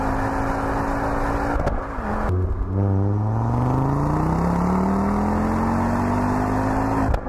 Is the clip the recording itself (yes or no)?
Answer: yes